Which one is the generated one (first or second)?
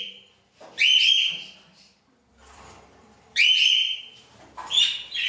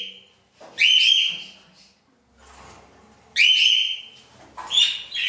first